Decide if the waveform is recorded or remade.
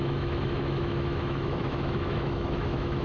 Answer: remade